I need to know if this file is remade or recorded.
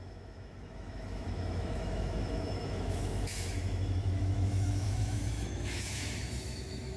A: remade